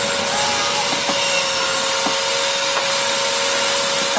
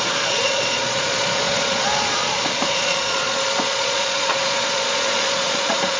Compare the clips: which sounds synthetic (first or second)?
second